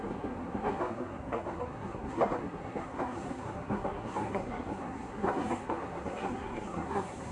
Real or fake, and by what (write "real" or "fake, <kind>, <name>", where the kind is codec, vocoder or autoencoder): fake, codec, SNAC